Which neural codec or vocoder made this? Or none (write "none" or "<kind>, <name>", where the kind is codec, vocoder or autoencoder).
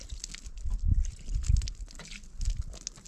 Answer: none